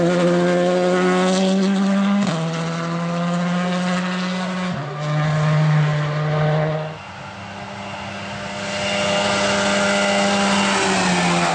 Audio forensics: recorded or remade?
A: recorded